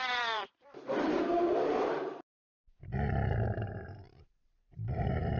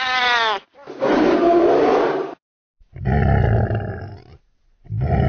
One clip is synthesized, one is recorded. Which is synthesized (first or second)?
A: first